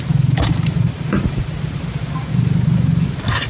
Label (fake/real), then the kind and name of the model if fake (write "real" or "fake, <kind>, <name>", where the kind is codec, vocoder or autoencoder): fake, vocoder, BigVGAN v2